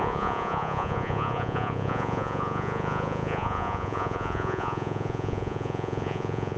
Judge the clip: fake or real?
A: fake